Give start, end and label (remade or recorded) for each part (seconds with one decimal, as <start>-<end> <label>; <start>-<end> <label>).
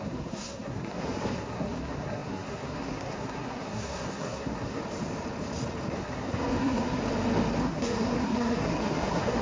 0.0-4.8 remade; 4.8-5.9 recorded; 5.9-7.0 remade; 7.0-7.6 recorded; 7.6-9.4 remade